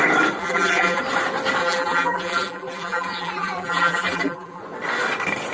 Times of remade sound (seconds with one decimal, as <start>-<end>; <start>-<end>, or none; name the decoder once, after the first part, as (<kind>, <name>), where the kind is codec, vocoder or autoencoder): 0.4-1.0 (vocoder, BigVGAN v2); 1.6-4.6